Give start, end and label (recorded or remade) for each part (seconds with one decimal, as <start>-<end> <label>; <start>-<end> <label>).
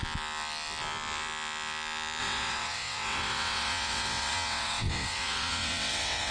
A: 0.0-2.2 recorded; 2.2-6.3 remade